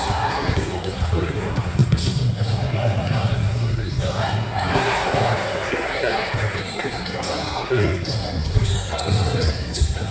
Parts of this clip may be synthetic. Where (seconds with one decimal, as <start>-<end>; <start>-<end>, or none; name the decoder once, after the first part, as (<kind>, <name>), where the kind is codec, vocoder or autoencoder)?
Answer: 0.0-10.1 (codec, SNAC)